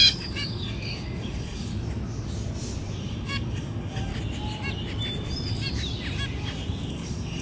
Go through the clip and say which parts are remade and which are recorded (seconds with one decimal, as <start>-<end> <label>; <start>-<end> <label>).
0.0-1.7 remade; 1.7-3.0 recorded; 3.0-4.1 remade; 4.1-6.9 recorded; 6.9-7.4 remade

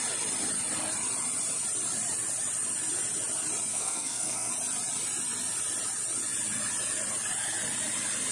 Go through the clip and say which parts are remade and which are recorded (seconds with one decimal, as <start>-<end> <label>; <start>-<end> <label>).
0.0-3.7 recorded; 3.7-4.5 remade; 4.5-8.3 recorded

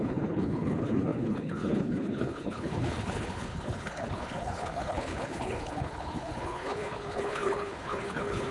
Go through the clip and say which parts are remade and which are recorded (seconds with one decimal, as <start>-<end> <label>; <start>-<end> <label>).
0.0-8.5 remade